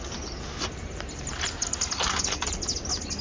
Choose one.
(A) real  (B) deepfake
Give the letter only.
A